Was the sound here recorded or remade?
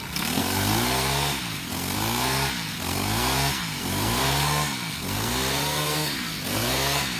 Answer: remade